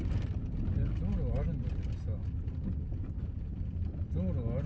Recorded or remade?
recorded